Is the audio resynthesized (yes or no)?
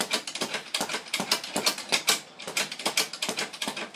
no